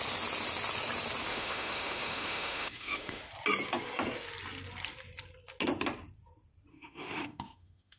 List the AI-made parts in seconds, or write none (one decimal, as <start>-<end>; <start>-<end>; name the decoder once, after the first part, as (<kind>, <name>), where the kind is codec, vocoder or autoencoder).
1.3-3.3 (autoencoder, DAC-VAE); 6.7-8.0